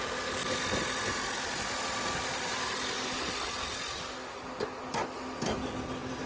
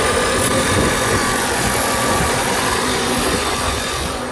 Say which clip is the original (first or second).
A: first